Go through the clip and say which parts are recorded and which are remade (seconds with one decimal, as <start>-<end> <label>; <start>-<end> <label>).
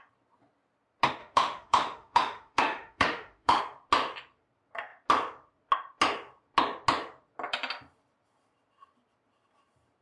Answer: 0.0-1.2 recorded; 1.2-3.6 remade; 3.6-10.0 recorded